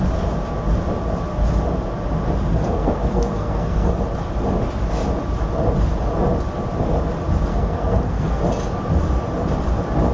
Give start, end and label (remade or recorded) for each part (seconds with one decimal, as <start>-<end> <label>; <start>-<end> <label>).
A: 0.0-2.5 recorded; 2.5-3.9 remade; 3.9-7.5 recorded; 7.5-8.4 remade; 8.4-10.1 recorded